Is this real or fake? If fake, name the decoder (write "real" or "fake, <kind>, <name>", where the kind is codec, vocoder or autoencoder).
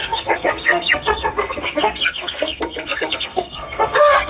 fake, codec, SNAC